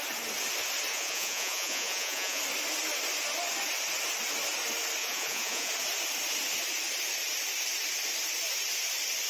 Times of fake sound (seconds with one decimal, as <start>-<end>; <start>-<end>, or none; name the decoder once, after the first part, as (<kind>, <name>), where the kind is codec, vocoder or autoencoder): 0.9-2.4 (vocoder, Vocos); 5.0-5.7